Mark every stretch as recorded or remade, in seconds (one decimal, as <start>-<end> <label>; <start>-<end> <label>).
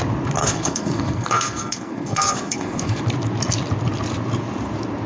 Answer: 0.0-0.4 recorded; 0.4-3.0 remade; 3.0-5.1 recorded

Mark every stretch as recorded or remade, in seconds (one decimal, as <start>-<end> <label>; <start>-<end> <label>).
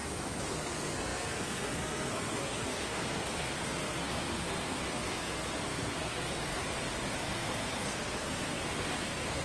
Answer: 0.0-0.5 recorded; 0.5-6.6 remade; 6.6-7.2 recorded; 7.2-9.4 remade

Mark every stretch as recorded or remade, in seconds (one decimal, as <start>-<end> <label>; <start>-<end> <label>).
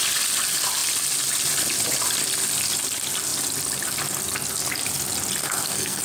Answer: 0.0-5.4 recorded; 5.4-6.0 remade